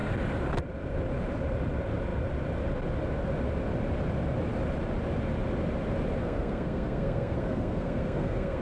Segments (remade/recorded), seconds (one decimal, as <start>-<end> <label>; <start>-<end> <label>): 0.0-6.2 recorded; 6.2-8.6 remade